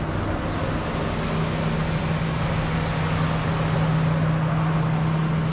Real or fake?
real